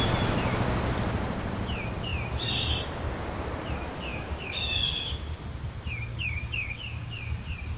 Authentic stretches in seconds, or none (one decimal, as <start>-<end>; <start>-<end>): 0.0-4.1; 5.2-6.1; 7.1-7.8